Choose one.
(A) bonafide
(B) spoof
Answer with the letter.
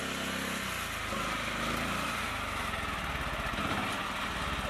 A